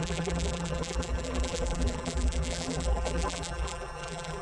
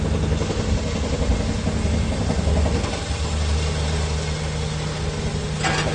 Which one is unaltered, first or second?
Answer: second